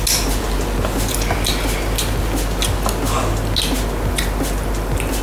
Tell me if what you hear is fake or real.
real